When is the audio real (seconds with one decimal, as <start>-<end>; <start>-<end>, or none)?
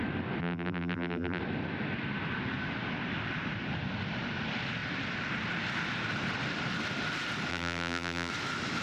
0.0-0.4; 1.4-7.5; 8.3-8.8